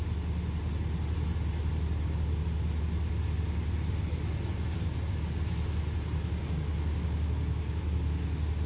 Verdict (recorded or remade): recorded